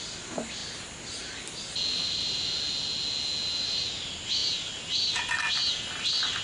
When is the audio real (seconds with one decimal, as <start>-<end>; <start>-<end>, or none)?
0.0-6.4